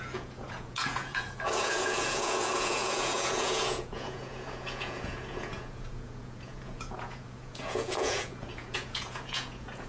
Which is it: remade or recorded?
remade